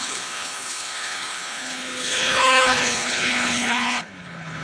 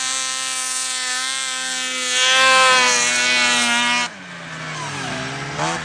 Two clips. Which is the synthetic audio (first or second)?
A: first